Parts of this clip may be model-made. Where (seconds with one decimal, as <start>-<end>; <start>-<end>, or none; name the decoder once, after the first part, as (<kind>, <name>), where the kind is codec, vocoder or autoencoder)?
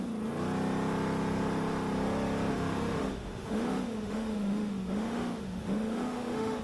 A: 2.5-6.6 (autoencoder, DAC-VAE)